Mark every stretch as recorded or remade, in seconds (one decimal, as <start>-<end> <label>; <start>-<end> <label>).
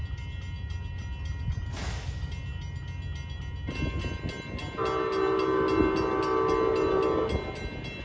0.0-8.0 recorded